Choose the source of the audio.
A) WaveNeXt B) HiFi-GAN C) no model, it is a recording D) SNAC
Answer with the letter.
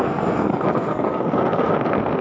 D